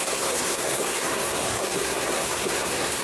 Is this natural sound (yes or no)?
no